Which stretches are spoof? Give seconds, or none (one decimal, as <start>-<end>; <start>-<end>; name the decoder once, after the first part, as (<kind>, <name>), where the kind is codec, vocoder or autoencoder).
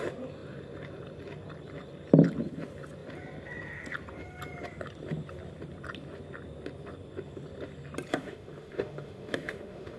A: 8.1-10.0 (autoencoder, DAC-VAE)